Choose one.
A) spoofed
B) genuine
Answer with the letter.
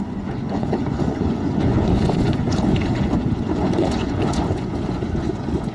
A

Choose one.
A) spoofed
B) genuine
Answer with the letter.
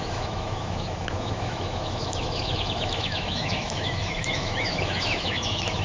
A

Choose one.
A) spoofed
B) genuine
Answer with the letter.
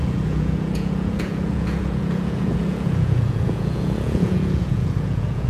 A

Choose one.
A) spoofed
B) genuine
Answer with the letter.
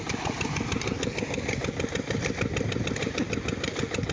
B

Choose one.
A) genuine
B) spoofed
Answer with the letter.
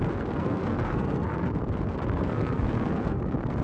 B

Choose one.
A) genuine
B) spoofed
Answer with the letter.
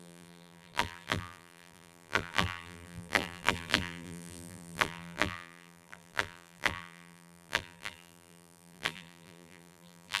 B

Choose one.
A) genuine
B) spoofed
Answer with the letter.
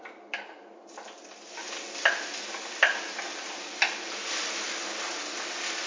A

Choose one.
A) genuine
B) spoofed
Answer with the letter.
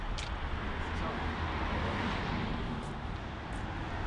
A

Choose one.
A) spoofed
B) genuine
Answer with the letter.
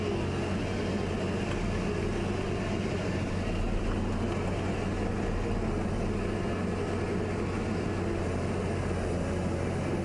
B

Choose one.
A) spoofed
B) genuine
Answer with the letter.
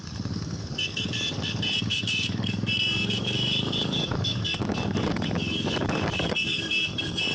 A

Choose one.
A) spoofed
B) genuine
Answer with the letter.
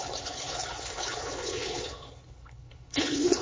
A